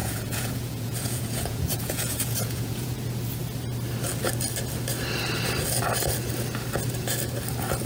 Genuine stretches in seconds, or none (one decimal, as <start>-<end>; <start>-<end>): 3.0-7.9